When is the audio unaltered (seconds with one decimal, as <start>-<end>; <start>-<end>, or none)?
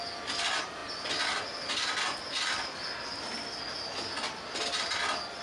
0.0-5.4